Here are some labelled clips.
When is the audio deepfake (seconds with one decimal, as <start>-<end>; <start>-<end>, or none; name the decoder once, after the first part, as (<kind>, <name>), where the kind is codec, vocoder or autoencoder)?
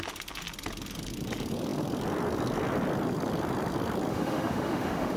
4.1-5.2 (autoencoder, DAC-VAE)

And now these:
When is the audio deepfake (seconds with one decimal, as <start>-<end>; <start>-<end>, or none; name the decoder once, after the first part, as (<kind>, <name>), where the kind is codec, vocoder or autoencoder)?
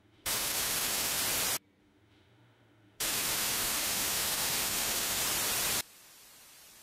0.0-1.2 (autoencoder, DAC-VAE); 1.8-5.2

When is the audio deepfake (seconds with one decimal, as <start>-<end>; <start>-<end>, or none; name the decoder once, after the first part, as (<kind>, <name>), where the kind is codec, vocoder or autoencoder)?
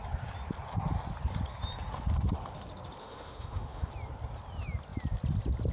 3.0-3.9 (autoencoder, DAC-VAE)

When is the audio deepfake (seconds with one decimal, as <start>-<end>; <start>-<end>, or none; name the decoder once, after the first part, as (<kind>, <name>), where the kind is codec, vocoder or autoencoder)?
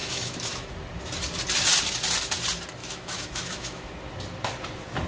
0.0-0.7 (autoencoder, DAC-VAE); 2.8-3.9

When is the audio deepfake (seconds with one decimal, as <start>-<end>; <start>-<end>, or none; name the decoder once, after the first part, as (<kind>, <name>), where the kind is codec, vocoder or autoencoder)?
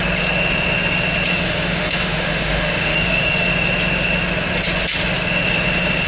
1.3-3.5 (autoencoder, DAC-VAE)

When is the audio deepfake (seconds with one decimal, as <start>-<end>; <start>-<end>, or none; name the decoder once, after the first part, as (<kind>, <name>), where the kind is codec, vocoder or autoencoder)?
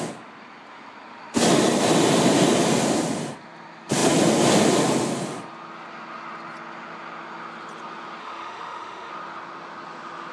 8.2-9.1 (autoencoder, DAC-VAE)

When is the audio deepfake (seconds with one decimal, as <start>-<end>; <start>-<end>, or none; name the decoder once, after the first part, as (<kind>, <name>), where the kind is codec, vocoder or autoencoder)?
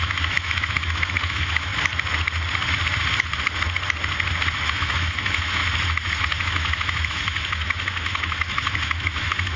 0.0-1.7 (autoencoder, DAC-VAE); 4.7-5.6; 6.2-9.6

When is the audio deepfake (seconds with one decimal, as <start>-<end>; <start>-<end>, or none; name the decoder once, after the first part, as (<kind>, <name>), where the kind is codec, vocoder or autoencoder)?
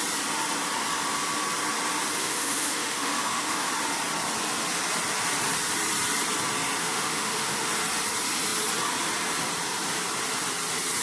2.2-3.7 (autoencoder, DAC-VAE); 6.8-7.7